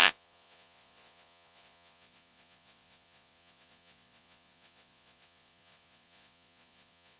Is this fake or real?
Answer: fake